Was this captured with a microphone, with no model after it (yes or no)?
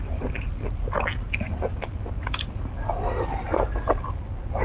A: yes